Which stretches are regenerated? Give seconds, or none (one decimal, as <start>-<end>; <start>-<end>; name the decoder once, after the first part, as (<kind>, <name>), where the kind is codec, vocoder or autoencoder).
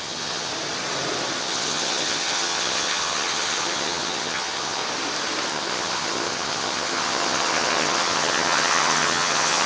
0.0-0.5 (vocoder, HiFi-GAN); 1.4-4.8; 5.5-9.7